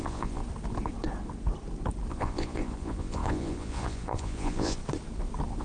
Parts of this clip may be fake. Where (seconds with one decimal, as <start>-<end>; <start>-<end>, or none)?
0.0-0.4; 2.1-4.8